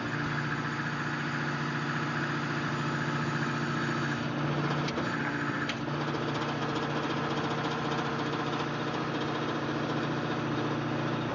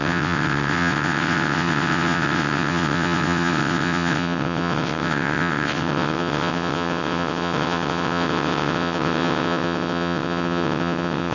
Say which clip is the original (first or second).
first